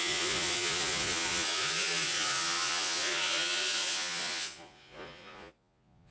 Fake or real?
fake